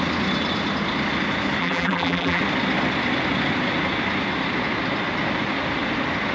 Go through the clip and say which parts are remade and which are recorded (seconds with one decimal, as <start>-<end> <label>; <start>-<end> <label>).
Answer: 0.0-1.6 recorded; 1.6-2.4 remade; 2.4-6.3 recorded